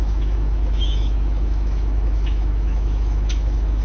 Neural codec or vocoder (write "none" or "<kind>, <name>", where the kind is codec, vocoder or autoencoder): autoencoder, DAC-VAE